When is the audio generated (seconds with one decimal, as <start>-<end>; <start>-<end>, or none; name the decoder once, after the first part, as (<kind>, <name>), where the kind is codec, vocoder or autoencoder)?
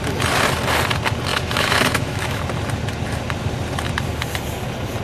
1.3-2.4 (autoencoder, DAC-VAE)